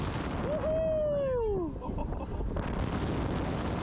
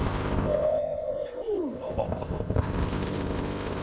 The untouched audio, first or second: first